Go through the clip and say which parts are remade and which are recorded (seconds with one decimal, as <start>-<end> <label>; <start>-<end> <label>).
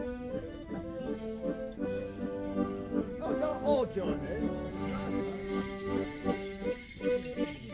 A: 0.0-5.4 remade; 5.4-7.7 recorded